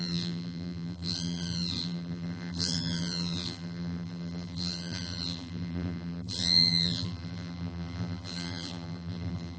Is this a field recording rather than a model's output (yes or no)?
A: no